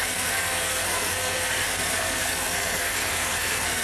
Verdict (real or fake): fake